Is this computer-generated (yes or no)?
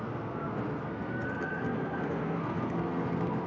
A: yes